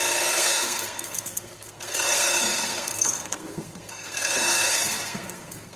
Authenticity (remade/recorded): remade